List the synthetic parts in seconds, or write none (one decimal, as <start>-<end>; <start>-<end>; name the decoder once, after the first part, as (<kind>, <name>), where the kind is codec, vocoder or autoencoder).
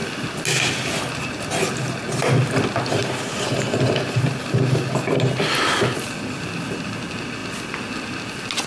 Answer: none